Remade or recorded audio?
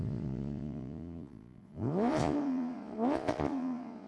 remade